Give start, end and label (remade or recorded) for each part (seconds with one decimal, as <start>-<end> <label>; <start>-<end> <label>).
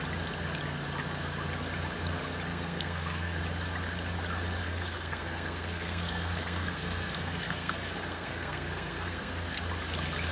0.0-2.5 recorded; 2.5-3.4 remade; 3.4-4.6 recorded; 4.6-9.6 remade; 9.6-10.3 recorded